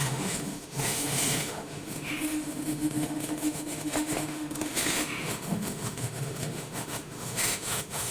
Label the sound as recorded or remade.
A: remade